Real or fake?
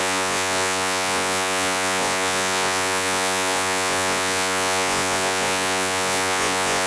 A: fake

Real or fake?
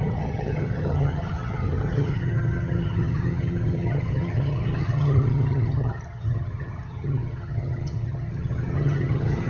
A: fake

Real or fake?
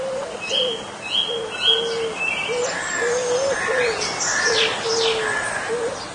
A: real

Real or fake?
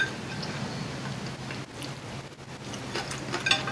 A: real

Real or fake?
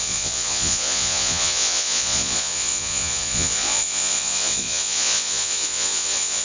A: fake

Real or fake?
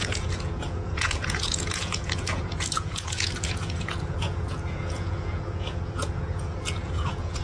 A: fake